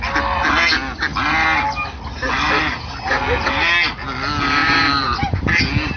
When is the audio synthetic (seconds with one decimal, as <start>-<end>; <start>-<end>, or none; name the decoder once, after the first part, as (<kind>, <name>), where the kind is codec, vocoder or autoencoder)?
4.6-5.4 (vocoder, BigVGAN v2)